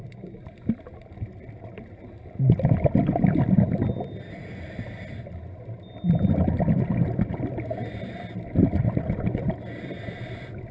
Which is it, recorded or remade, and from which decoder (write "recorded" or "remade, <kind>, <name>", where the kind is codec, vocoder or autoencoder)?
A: recorded